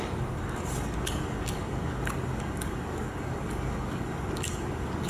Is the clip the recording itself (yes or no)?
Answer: no